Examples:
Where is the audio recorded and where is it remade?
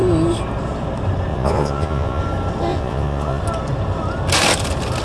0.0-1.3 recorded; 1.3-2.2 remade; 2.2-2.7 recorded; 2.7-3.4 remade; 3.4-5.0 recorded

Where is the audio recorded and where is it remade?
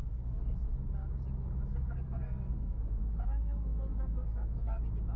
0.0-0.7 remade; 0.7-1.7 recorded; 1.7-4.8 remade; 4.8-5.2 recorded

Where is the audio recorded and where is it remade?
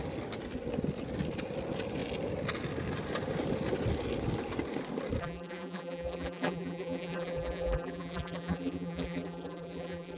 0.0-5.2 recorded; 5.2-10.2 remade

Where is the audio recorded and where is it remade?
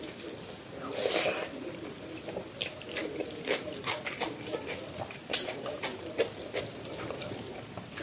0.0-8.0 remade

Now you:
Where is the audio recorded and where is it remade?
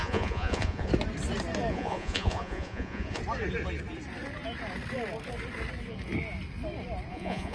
0.0-0.9 remade; 0.9-1.7 recorded; 1.7-3.2 remade; 3.2-7.1 recorded; 7.1-7.5 remade